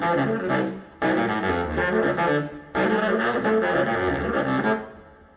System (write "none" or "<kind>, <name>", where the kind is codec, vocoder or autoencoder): none